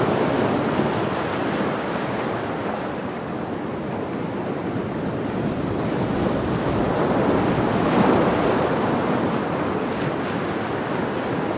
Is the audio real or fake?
real